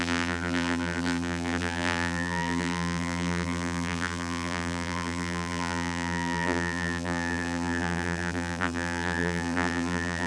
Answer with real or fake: fake